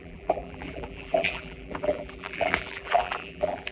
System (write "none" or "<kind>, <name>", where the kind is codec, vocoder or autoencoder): vocoder, BigVGAN v2